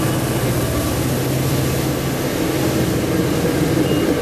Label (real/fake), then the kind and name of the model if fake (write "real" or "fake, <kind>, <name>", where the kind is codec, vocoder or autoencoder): real